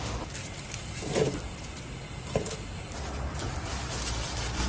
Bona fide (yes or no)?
yes